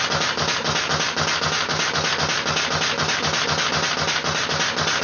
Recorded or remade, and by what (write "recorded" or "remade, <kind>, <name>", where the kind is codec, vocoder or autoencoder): recorded